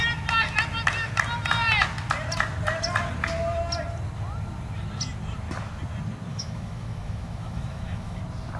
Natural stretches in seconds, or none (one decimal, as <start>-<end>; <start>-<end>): 0.0-6.3; 8.2-8.6